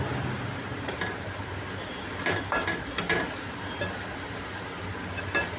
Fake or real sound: real